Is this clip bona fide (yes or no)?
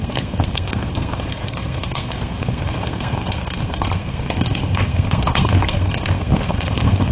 no